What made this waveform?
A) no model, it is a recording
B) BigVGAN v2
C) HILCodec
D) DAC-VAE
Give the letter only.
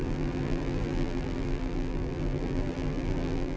B